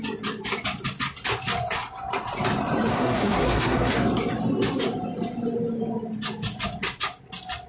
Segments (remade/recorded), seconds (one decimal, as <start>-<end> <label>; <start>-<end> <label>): 0.0-2.9 recorded; 2.9-3.9 remade; 3.9-7.7 recorded